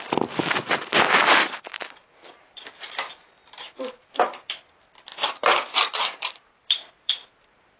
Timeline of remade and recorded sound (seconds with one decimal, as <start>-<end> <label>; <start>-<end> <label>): 0.0-5.1 remade; 5.1-6.3 recorded; 6.3-7.8 remade